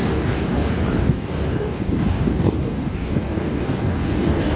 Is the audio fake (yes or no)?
yes